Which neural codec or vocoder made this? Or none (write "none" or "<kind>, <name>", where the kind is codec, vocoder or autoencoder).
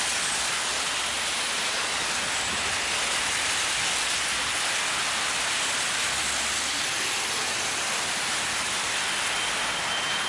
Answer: none